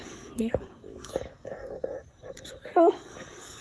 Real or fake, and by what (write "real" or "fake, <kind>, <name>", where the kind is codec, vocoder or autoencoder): fake, codec, DAC